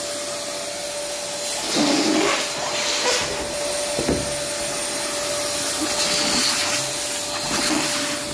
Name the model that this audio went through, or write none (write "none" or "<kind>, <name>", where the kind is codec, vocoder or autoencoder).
none